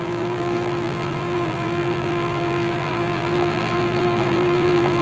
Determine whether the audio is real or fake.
fake